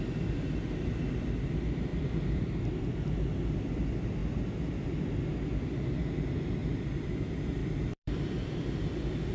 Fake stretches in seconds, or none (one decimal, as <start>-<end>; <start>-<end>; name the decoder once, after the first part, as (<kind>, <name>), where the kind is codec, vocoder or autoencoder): 1.9-3.1 (vocoder, BigVGAN v2); 6.6-7.1; 7.6-9.3